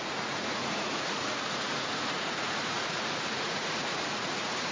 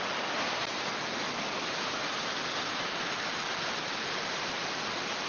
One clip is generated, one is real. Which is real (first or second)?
second